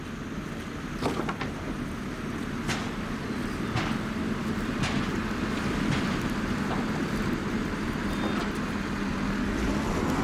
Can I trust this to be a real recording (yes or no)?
yes